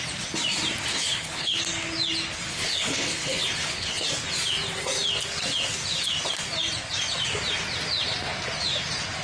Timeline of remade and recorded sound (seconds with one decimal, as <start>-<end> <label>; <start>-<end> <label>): 0.0-0.9 recorded; 0.9-1.6 remade; 1.6-2.5 recorded; 2.5-4.1 remade; 4.1-9.2 recorded